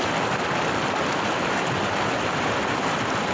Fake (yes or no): no